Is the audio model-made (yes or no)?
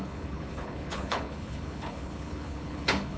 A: yes